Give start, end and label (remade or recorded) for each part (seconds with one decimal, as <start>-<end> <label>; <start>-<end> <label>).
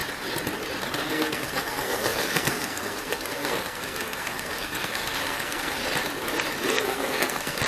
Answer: 0.0-1.1 recorded; 1.1-5.8 remade; 5.8-6.7 recorded; 6.7-7.7 remade